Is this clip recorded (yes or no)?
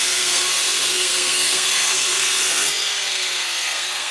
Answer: no